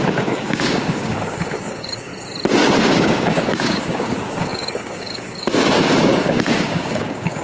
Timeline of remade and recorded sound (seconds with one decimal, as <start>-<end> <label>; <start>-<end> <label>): 0.0-2.1 remade; 2.1-2.8 recorded; 2.8-7.4 remade